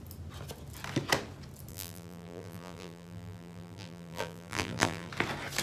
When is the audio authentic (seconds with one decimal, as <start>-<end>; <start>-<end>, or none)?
0.0-1.7; 5.1-5.6